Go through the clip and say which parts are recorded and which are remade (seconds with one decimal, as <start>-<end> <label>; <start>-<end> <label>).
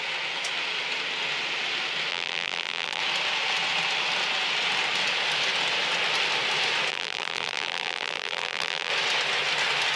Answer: 0.0-2.1 recorded; 2.1-3.0 remade; 3.0-6.9 recorded; 6.9-8.9 remade; 8.9-10.0 recorded